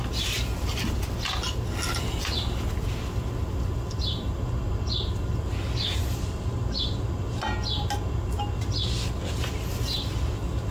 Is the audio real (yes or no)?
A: yes